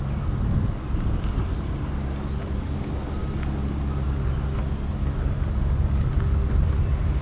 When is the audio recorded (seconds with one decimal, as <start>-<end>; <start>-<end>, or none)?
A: 0.0-7.2